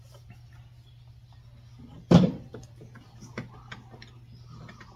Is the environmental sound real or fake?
real